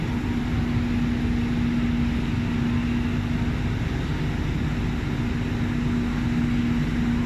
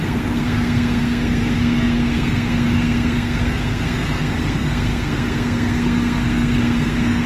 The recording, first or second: first